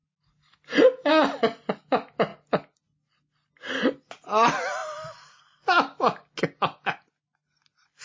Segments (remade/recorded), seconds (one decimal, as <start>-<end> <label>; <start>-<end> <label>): 0.0-8.0 recorded